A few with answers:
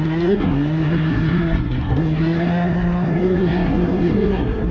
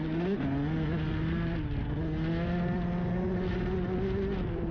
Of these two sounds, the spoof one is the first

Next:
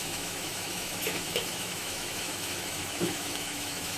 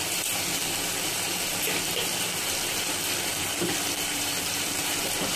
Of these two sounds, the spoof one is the first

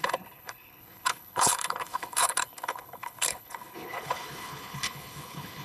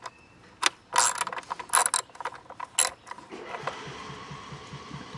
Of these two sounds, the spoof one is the first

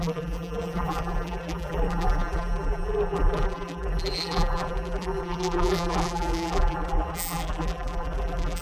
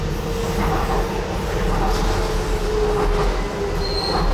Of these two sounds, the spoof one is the first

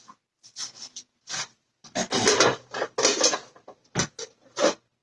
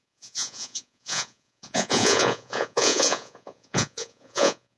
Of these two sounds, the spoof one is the second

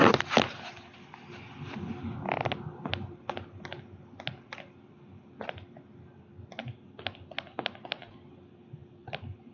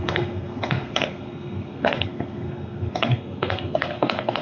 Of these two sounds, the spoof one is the second